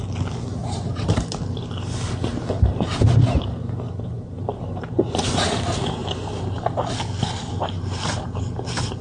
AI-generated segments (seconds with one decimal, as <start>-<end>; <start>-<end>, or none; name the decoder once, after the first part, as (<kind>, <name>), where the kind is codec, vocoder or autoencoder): 0.6-1.4 (vocoder, BigVGAN v2); 3.2-5.2; 6.0-6.6; 7.4-8.4